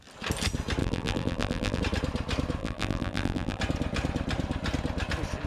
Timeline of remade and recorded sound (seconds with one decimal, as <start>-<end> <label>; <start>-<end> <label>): 0.0-0.8 recorded; 0.8-1.8 remade; 1.8-2.6 recorded; 2.6-3.6 remade; 3.6-5.5 recorded